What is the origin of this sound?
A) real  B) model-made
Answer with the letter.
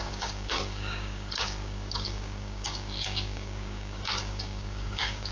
B